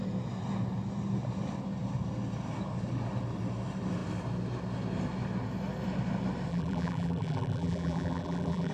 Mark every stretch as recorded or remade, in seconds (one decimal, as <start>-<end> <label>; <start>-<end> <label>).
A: 0.0-6.5 recorded; 6.5-8.7 remade